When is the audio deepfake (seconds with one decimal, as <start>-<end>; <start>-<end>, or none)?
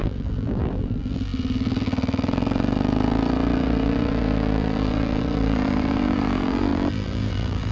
0.0-7.7